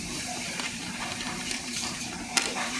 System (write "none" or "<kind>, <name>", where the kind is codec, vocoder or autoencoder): vocoder, BigVGAN v2